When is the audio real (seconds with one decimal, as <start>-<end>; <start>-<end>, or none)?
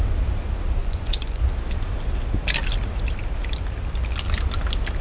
0.0-0.8; 1.4-5.0